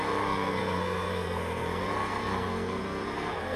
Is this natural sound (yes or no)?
no